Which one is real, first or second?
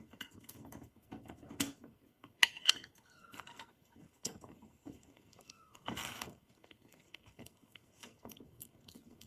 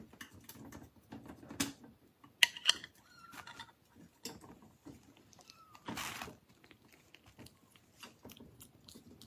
second